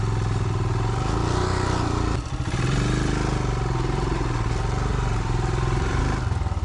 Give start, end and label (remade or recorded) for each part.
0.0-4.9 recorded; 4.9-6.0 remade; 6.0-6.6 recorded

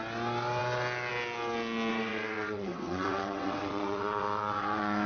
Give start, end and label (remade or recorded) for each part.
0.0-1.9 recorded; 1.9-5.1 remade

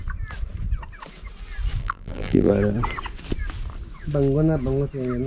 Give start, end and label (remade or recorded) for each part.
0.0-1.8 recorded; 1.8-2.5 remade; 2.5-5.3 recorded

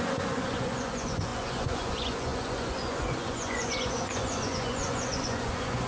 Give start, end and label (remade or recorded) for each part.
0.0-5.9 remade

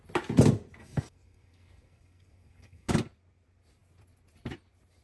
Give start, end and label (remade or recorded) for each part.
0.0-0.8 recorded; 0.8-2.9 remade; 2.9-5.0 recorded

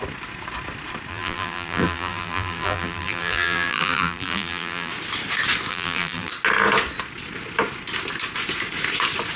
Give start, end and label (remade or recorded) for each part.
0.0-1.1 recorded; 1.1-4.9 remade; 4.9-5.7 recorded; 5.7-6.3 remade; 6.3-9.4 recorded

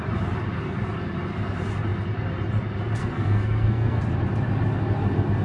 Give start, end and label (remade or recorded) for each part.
0.0-3.0 recorded; 3.0-4.0 remade; 4.0-5.4 recorded

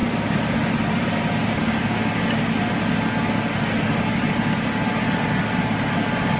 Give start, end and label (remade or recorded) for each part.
0.0-1.4 recorded; 1.4-2.1 remade; 2.1-6.4 recorded